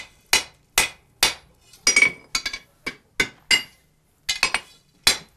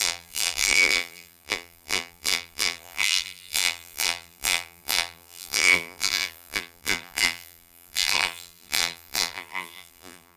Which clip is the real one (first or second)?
first